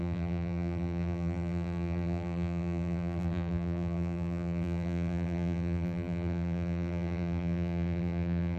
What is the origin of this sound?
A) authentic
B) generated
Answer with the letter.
B